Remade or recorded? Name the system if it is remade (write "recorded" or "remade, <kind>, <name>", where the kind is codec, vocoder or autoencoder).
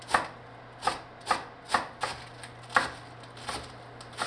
recorded